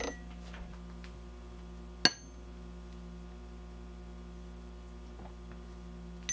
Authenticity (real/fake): real